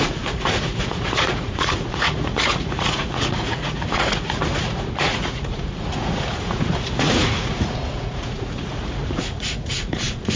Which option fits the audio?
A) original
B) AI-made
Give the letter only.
B